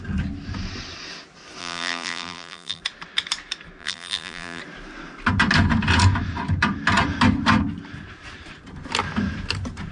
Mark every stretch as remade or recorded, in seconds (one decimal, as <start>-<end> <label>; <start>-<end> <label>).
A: 0.0-1.6 recorded; 1.6-2.8 remade; 2.8-3.8 recorded; 3.8-4.6 remade; 4.6-9.9 recorded

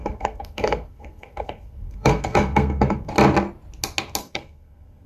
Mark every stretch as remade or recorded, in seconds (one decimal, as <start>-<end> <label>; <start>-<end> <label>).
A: 0.0-3.1 remade; 3.1-4.2 recorded; 4.2-5.1 remade

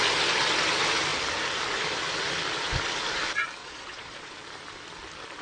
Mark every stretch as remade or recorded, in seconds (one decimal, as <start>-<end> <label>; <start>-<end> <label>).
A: 0.0-3.6 recorded; 3.6-4.3 remade; 4.3-5.4 recorded

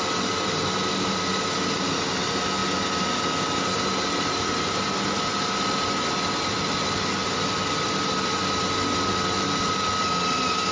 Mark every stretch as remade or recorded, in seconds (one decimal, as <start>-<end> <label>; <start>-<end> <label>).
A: 0.0-10.7 recorded